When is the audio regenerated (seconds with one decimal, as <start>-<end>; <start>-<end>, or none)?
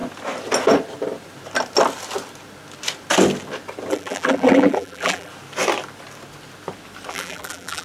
3.9-5.3; 7.1-7.8